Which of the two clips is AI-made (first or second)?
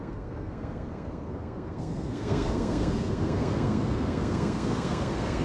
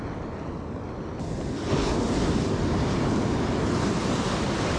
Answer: first